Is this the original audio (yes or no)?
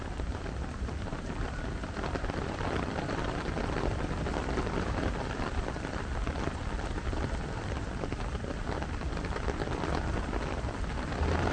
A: no